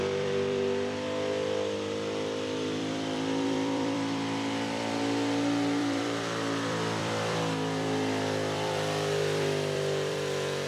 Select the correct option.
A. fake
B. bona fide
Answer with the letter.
A